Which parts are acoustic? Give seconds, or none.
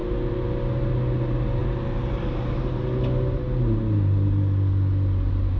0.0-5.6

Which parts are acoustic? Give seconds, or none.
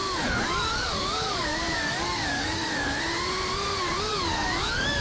3.0-4.1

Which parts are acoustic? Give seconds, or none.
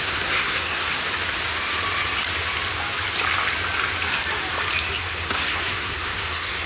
1.0-5.0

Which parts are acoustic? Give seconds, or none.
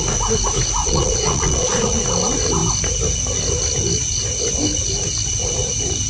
0.0-0.8; 2.0-6.1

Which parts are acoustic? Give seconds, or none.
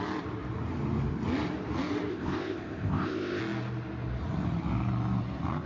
0.0-2.1; 3.4-5.7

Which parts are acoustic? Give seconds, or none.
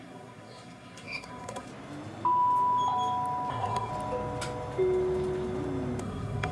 1.7-3.5; 3.9-6.0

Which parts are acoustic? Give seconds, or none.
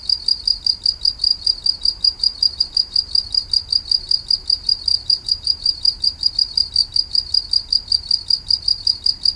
0.0-1.3; 2.6-4.9; 6.3-9.4